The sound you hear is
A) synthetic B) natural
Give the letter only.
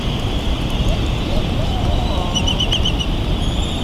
A